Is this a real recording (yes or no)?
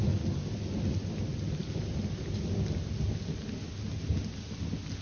yes